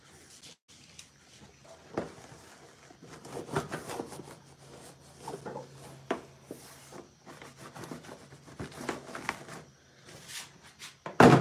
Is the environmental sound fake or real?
real